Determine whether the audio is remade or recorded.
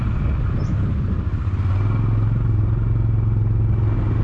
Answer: recorded